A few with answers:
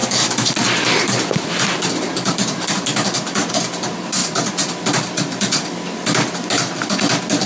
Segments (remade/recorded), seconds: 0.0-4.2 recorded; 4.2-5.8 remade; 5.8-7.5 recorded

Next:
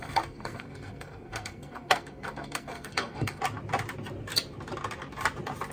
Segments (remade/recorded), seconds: 0.0-3.4 remade; 3.4-5.7 recorded

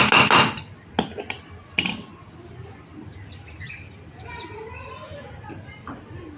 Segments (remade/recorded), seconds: 0.0-6.4 recorded

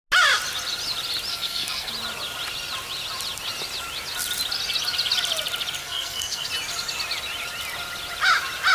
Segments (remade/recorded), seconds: 0.0-1.3 recorded; 1.3-1.9 remade; 1.9-5.8 recorded; 5.8-6.5 remade; 6.5-8.7 recorded

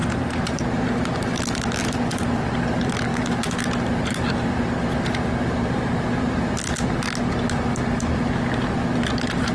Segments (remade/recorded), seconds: 0.0-0.6 remade; 0.6-9.5 recorded

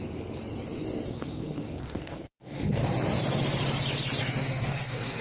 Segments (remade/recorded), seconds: 0.0-0.5 recorded; 0.5-2.8 remade; 2.8-4.2 recorded; 4.2-5.2 remade

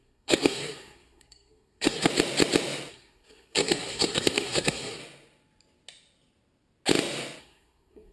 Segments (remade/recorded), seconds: 0.0-2.1 remade; 2.1-2.9 recorded; 2.9-5.0 remade; 5.0-7.4 recorded; 7.4-8.1 remade

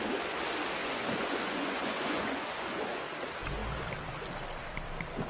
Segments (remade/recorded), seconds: 0.0-0.8 recorded; 0.8-3.0 remade; 3.0-5.3 recorded